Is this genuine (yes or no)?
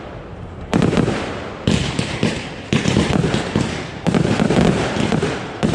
no